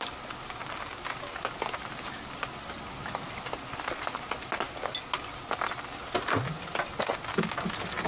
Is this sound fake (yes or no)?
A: no